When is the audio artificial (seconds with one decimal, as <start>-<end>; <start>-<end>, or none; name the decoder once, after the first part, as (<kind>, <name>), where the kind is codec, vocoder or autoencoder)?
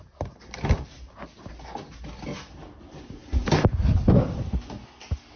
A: none